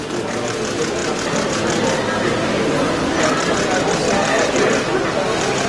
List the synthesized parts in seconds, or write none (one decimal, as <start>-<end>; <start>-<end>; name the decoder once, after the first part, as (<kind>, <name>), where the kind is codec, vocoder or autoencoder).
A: none